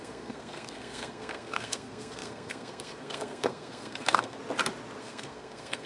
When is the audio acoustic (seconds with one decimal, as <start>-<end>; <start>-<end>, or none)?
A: 4.4-5.0